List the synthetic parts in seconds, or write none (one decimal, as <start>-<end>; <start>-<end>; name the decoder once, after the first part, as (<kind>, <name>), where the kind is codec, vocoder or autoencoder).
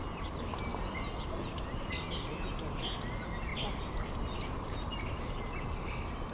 3.5-5.0 (vocoder, BigVGAN v2)